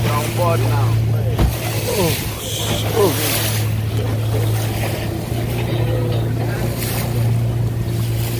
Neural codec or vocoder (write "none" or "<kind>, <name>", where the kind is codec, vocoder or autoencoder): none